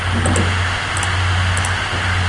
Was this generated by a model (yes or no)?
no